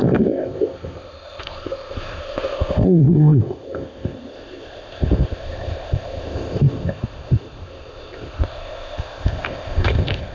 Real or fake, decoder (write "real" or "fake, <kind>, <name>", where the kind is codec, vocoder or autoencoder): fake, codec, ZipCodec